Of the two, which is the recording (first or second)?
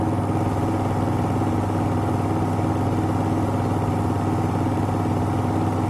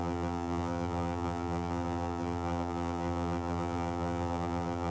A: first